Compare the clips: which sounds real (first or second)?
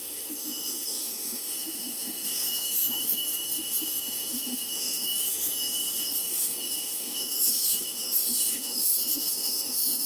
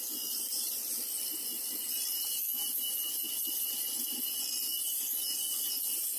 second